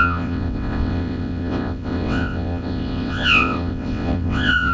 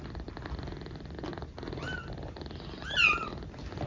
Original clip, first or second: second